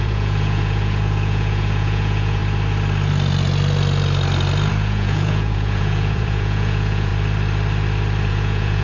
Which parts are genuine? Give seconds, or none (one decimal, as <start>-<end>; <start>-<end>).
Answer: 2.4-4.7; 7.1-8.3